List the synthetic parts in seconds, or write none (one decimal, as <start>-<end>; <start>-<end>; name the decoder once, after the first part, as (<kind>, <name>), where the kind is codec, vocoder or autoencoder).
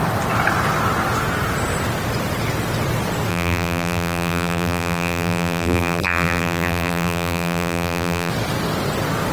3.3-8.3 (vocoder, BigVGAN v2)